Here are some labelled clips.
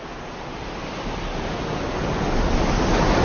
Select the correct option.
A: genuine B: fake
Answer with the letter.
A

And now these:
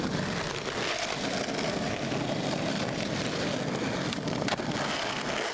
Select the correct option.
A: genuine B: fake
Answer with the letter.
A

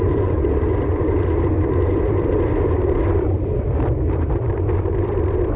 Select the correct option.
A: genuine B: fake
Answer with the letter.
B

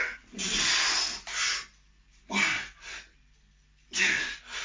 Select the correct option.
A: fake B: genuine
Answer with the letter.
B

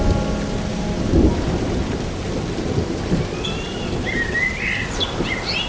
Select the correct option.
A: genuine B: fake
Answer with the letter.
A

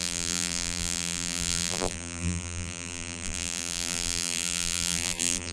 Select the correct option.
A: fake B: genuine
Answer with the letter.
A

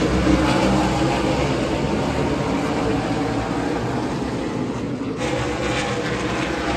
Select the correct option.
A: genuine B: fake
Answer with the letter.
A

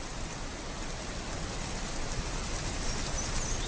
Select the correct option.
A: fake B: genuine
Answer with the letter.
B